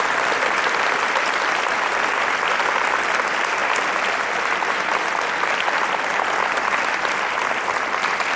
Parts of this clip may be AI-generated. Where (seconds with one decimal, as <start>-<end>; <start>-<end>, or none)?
none